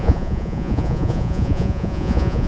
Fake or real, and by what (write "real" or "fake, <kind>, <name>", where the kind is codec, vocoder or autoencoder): fake, vocoder, Vocos